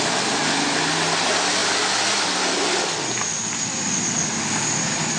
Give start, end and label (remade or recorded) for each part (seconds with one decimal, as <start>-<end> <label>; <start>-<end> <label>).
0.0-5.2 recorded